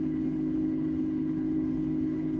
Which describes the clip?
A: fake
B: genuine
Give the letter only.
A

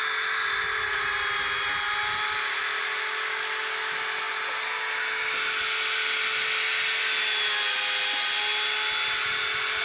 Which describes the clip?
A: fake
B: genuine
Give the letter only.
B